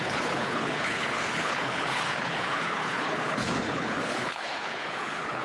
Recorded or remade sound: remade